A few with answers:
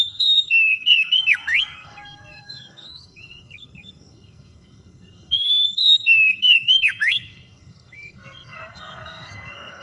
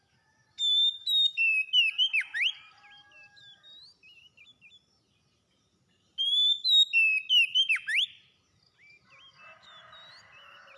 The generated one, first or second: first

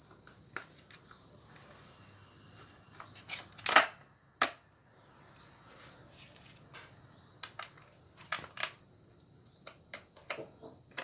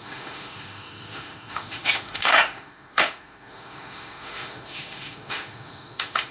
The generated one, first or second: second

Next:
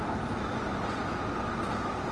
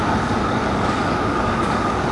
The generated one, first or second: second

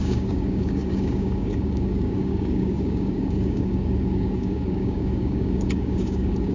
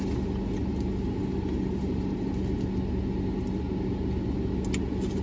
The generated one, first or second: first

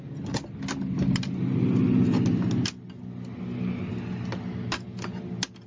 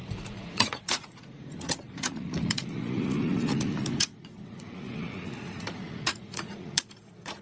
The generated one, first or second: second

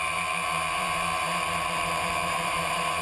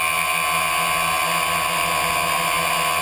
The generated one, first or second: first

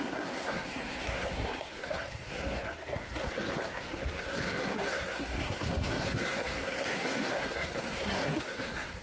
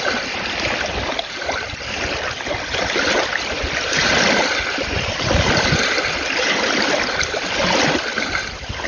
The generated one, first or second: first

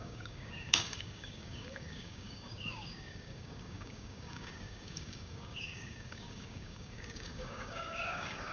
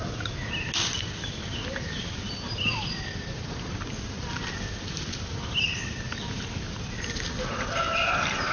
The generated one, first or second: first